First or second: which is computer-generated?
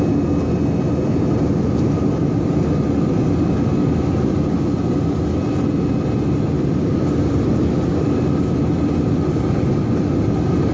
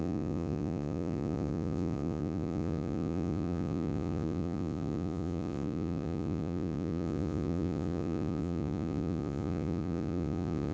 second